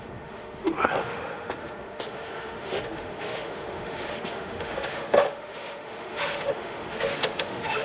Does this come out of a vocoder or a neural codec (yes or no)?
yes